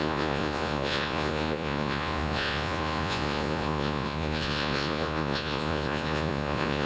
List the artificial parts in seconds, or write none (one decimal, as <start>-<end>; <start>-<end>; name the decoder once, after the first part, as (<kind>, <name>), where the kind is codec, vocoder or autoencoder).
0.0-6.9 (vocoder, Vocos)